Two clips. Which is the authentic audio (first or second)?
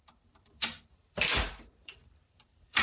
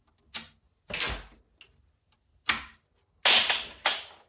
second